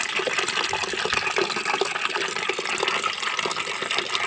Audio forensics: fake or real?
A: real